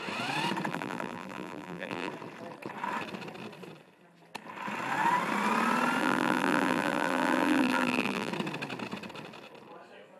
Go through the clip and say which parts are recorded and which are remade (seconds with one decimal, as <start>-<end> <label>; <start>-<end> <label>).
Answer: 0.0-0.7 recorded; 0.7-2.1 remade; 2.1-6.0 recorded; 6.0-8.3 remade; 8.3-10.2 recorded